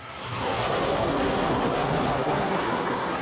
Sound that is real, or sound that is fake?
fake